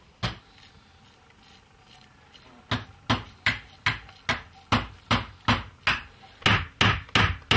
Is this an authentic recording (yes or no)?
yes